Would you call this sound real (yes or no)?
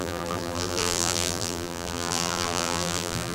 no